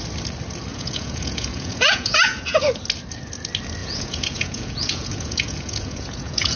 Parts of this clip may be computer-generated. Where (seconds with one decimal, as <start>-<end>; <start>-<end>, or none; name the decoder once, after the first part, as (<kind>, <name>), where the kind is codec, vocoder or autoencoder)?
0.7-2.8 (vocoder, Vocos); 3.8-6.6